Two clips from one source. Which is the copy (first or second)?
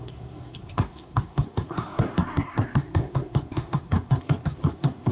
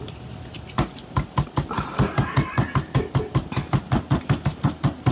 first